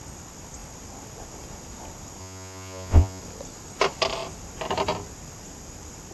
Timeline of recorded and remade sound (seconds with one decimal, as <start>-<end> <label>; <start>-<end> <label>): 0.0-2.2 recorded; 2.2-3.2 remade; 3.2-6.1 recorded